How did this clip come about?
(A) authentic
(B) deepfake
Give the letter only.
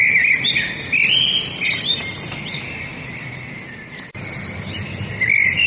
A